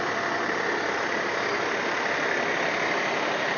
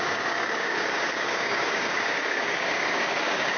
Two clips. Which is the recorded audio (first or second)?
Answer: first